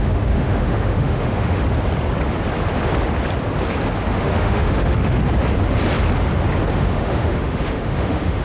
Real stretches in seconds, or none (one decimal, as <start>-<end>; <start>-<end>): 1.6-4.2; 5.2-6.7